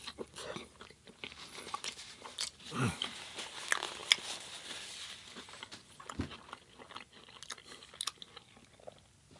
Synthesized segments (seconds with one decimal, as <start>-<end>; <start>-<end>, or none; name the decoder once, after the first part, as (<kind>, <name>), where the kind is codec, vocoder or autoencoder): 0.6-3.2 (vocoder, BigVGAN v2)